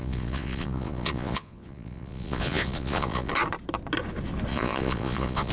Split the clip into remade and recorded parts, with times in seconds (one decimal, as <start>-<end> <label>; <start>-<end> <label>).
0.0-3.3 remade; 3.3-4.5 recorded; 4.5-5.5 remade